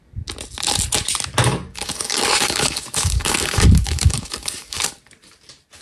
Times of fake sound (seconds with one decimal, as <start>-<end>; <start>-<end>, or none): 1.4-4.9